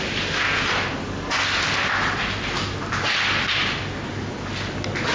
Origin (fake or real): real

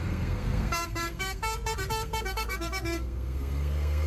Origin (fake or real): fake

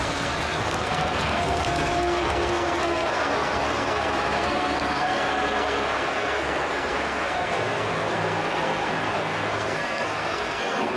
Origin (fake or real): fake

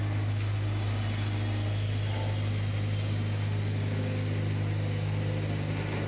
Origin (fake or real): real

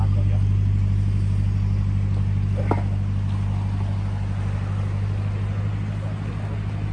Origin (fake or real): real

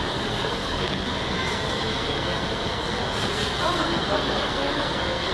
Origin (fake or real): fake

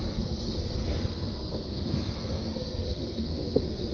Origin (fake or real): fake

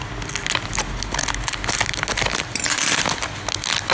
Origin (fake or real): real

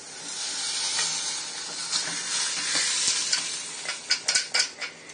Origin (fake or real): real